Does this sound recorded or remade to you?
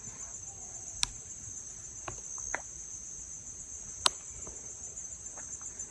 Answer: recorded